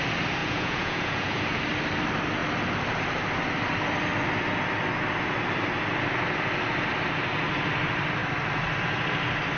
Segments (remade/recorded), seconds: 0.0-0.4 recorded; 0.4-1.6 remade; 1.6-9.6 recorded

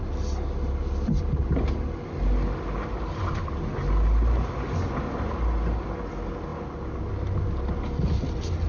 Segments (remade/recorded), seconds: 0.0-8.7 recorded

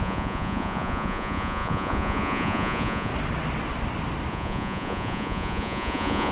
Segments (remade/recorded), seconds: 0.0-3.1 remade; 3.1-4.3 recorded; 4.3-6.3 remade

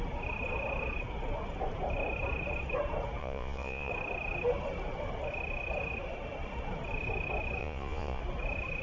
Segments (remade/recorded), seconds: 0.0-3.2 recorded; 3.2-3.9 remade; 3.9-7.6 recorded; 7.6-8.2 remade; 8.2-8.8 recorded

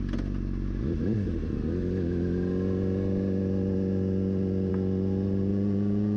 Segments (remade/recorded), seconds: 0.0-5.5 recorded; 5.5-6.2 remade